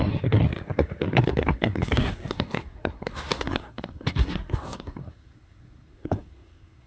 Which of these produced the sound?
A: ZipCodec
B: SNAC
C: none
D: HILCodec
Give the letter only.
B